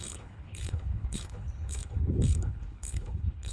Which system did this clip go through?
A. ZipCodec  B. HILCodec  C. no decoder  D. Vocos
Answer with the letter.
B